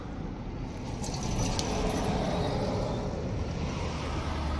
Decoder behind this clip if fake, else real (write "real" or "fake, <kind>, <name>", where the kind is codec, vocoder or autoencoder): real